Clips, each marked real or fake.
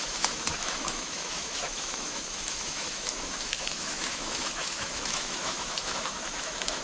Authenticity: fake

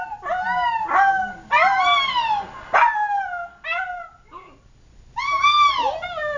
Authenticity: real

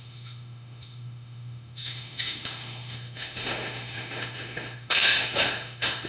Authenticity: fake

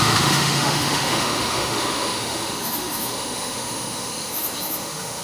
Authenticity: fake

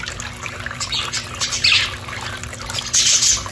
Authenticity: real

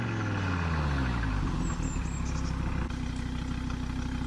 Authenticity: real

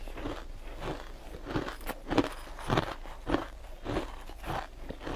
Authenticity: real